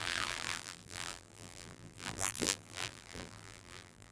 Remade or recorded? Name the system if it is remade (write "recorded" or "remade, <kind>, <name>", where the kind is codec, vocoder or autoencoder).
remade, vocoder, BigVGAN v2